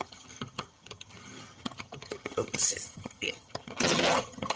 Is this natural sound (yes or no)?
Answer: no